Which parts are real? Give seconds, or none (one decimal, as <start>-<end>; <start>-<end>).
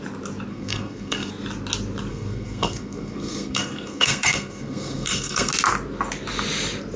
0.0-0.5; 1.3-2.1; 5.5-7.0